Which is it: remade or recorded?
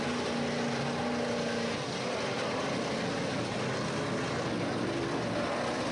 recorded